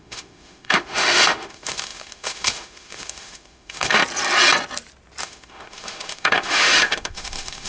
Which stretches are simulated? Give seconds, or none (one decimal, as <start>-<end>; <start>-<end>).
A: 0.0-4.0; 5.2-7.7